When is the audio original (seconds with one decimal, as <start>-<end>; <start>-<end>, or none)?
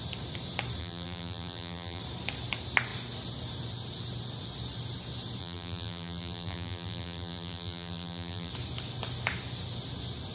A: 0.0-0.8; 2.0-5.4; 8.5-10.3